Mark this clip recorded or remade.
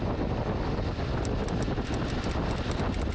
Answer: recorded